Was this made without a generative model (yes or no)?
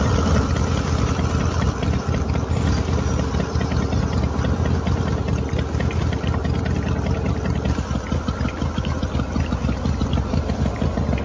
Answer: yes